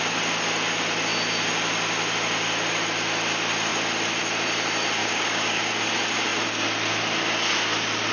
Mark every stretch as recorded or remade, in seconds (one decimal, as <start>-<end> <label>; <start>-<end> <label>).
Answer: 0.0-5.0 recorded; 5.0-5.7 remade; 5.7-8.1 recorded